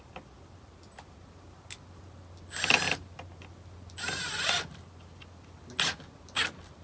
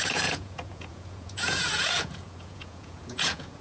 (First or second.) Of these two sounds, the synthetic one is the second